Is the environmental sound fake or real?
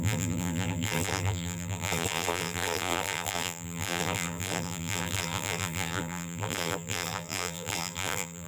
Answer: fake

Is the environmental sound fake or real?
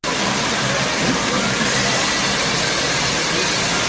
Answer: real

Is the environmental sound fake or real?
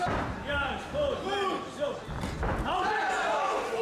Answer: fake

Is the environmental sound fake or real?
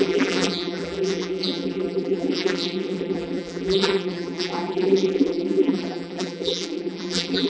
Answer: fake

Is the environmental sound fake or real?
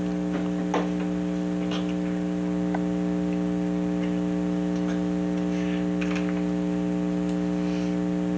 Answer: real